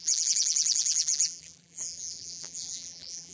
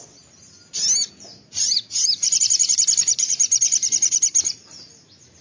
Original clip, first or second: second